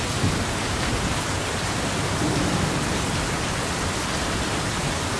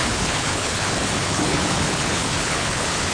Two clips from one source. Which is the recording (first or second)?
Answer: first